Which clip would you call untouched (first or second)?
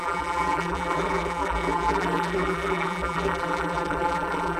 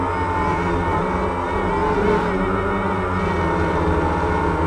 second